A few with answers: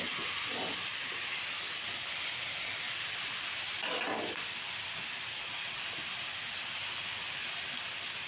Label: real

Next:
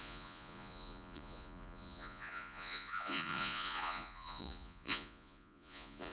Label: fake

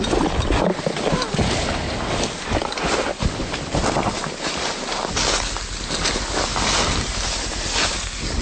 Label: real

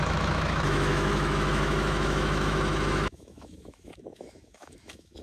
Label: fake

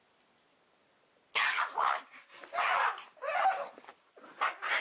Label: real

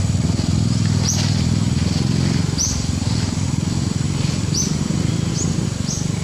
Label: real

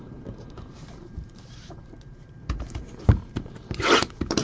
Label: fake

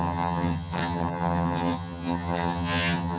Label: fake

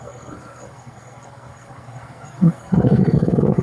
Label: fake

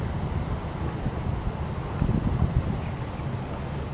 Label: real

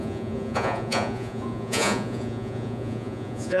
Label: fake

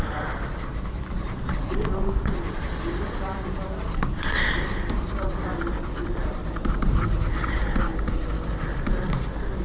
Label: fake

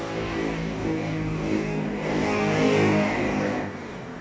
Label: fake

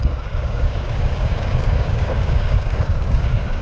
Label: fake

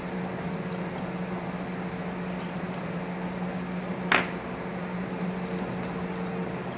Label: real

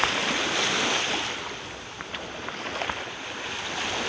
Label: real